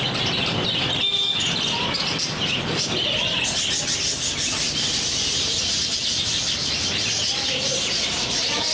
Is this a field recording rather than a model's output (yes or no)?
yes